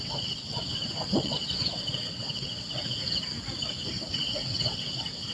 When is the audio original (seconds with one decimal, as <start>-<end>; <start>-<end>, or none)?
2.8-4.1